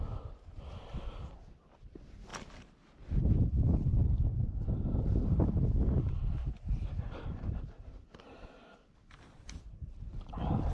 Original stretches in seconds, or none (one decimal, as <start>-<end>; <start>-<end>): 0.0-10.7